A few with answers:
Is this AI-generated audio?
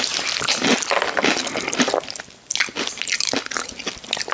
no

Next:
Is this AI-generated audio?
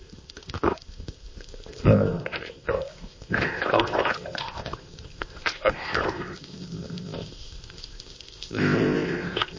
yes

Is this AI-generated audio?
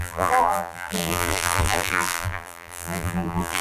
yes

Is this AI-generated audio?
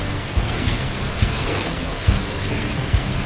yes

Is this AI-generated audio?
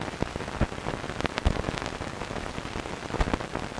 no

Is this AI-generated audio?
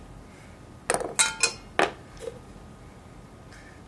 no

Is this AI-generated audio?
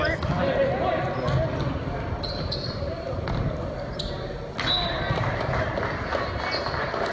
no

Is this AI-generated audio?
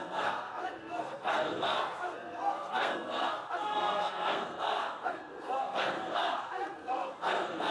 yes